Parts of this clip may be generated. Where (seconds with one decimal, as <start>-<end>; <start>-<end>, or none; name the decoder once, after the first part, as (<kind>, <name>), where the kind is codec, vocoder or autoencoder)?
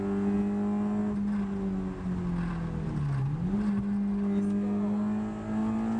none